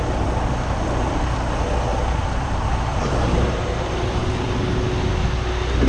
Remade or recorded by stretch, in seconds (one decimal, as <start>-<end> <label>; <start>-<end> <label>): 0.0-1.9 recorded; 1.9-3.6 remade; 3.6-5.9 recorded